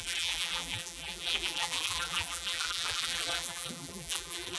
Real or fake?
fake